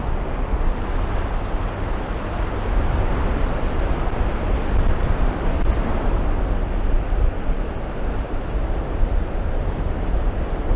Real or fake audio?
real